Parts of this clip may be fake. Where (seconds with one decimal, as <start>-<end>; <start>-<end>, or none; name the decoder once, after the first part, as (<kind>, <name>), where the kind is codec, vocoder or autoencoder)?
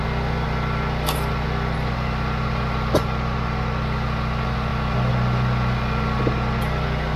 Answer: none